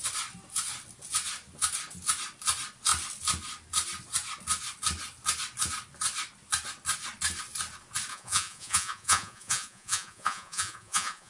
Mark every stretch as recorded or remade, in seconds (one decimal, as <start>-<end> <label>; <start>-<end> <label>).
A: 0.0-8.1 recorded; 8.1-11.3 remade